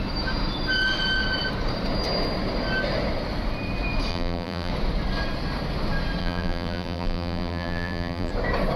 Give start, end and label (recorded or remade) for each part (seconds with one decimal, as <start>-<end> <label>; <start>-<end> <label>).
0.0-4.1 recorded; 4.1-4.7 remade; 4.7-6.2 recorded; 6.2-8.3 remade; 8.3-8.8 recorded